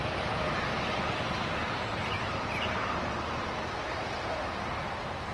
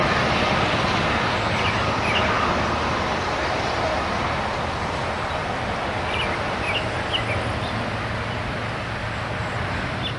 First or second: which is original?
second